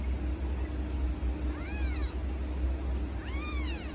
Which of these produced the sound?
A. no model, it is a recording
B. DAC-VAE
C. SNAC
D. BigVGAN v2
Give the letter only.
A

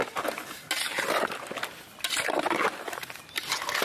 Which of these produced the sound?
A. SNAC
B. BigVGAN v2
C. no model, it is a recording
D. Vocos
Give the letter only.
C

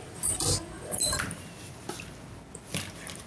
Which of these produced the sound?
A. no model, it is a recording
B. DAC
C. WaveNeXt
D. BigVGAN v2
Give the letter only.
A